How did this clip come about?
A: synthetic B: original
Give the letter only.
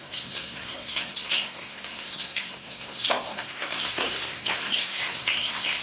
A